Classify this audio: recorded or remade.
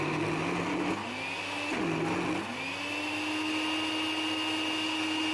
recorded